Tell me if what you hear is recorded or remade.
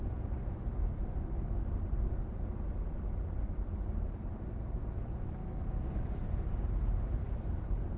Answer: recorded